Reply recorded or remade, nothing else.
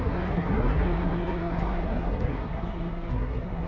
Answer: remade